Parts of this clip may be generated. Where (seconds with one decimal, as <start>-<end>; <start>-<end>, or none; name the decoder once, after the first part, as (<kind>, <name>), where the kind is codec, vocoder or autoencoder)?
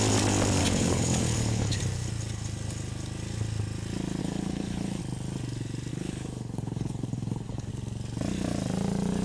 0.6-1.8 (codec, HILCodec); 4.2-5.0; 5.9-7.7